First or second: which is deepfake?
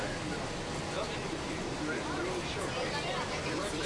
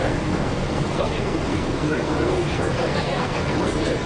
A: second